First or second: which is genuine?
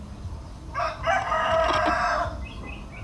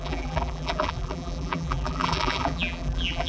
first